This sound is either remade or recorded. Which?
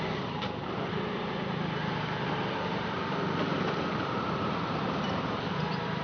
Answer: remade